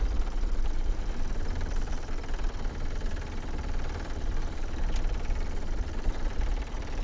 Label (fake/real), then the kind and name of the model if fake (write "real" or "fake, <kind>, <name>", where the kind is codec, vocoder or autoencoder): real